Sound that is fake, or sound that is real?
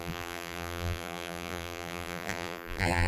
fake